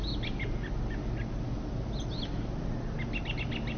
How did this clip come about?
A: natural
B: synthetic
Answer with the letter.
A